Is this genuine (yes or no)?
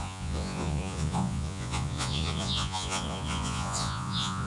no